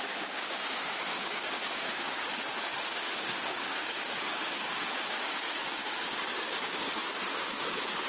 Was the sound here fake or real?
fake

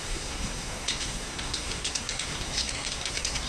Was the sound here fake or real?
fake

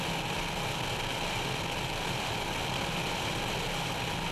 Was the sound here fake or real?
real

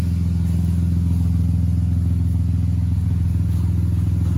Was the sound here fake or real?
real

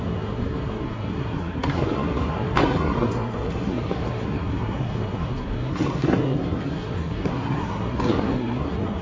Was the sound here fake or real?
fake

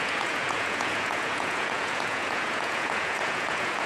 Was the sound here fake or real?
fake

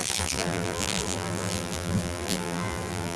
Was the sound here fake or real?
fake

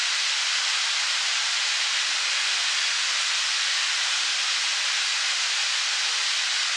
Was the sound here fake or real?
real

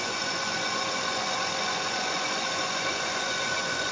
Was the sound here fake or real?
fake